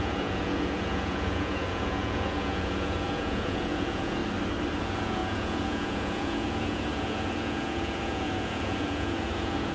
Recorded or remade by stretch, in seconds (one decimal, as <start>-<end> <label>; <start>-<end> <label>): 0.0-4.2 remade; 4.2-4.8 recorded; 4.8-9.7 remade